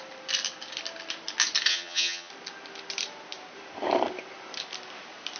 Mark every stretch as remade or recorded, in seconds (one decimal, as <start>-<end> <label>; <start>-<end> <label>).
0.0-1.7 recorded; 1.7-2.3 remade; 2.3-5.4 recorded